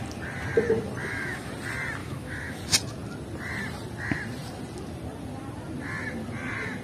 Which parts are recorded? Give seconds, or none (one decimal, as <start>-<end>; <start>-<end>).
0.0-1.0; 1.5-2.0; 2.6-6.8